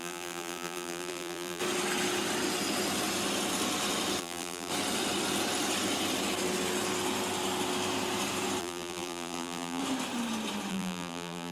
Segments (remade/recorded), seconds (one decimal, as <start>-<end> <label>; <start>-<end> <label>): 0.0-1.6 remade; 1.6-4.2 recorded; 4.2-4.7 remade; 4.7-8.6 recorded; 8.6-9.8 remade; 9.8-10.7 recorded; 10.7-11.5 remade